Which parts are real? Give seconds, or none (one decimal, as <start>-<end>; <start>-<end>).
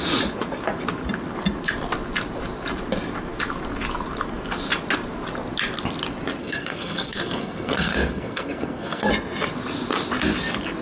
0.0-6.4; 9.1-10.8